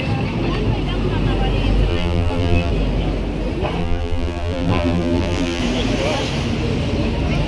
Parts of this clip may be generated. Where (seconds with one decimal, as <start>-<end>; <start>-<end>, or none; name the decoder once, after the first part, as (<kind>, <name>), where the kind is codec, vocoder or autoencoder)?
1.9-2.7 (vocoder, BigVGAN v2); 3.8-5.6